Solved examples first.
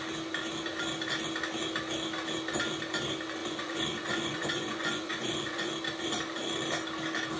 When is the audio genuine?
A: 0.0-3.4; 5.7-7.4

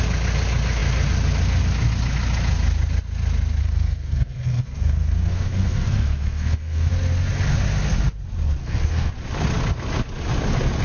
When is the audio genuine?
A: 0.0-3.6; 6.9-8.6; 9.1-10.8